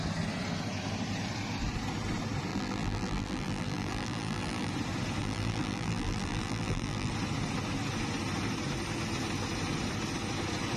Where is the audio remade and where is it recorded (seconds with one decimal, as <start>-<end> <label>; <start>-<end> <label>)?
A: 0.0-2.5 recorded; 2.5-4.7 remade; 4.7-5.2 recorded; 5.2-7.1 remade; 7.1-10.8 recorded